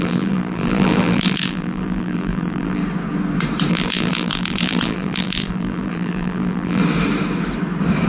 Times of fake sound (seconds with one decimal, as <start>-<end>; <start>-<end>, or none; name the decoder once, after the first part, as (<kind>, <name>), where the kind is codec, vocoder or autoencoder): 0.0-2.8 (vocoder, BigVGAN v2); 3.7-6.8